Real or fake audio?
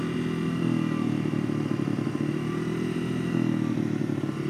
real